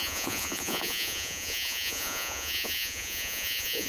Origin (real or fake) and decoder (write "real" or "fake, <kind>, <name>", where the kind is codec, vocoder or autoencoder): fake, vocoder, Vocos